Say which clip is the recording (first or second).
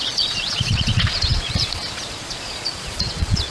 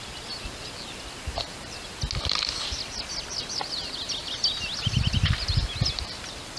second